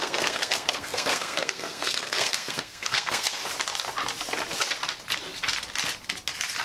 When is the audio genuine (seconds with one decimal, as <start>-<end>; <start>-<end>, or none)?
3.4-6.6